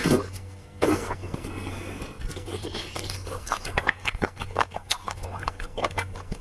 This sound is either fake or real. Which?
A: fake